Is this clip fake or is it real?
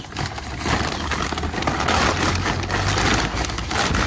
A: real